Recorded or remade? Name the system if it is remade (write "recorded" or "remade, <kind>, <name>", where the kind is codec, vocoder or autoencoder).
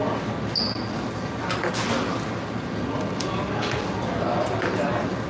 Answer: recorded